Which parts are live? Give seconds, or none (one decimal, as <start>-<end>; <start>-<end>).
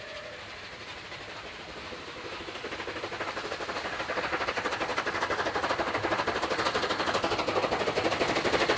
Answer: 0.0-0.9; 2.4-4.9; 6.5-8.8